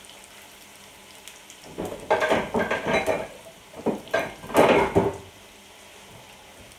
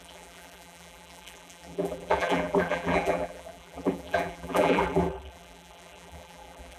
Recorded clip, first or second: first